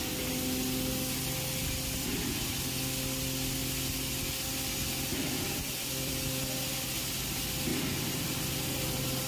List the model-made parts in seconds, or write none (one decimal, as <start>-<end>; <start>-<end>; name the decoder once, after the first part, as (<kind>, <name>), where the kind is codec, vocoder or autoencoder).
5.1-6.1 (vocoder, BigVGAN v2)